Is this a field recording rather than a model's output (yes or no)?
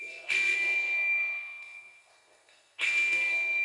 no